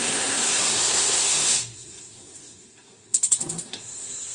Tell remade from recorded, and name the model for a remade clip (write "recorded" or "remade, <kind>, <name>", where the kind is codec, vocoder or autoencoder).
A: remade, codec, SNAC